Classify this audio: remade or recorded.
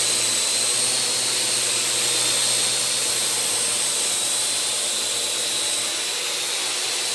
recorded